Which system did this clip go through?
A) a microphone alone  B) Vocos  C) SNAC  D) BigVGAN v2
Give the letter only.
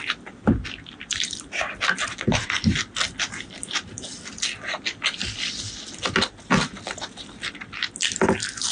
A